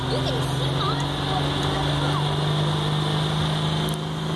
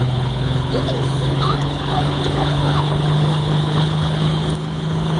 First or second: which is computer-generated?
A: second